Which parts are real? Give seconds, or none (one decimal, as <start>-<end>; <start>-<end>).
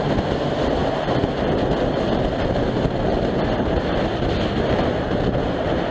0.0-5.9